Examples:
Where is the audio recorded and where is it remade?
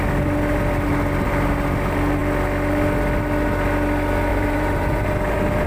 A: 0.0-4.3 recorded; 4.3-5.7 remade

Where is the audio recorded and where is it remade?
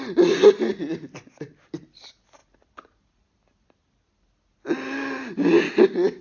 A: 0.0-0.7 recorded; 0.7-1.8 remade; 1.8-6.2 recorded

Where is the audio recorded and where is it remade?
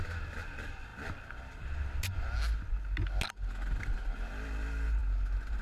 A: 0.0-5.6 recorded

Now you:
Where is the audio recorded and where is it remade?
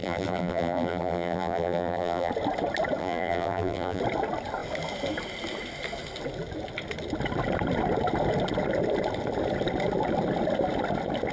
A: 0.0-2.3 remade; 2.3-3.0 recorded; 3.0-4.0 remade; 4.0-11.3 recorded